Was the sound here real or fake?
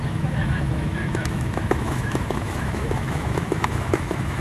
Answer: fake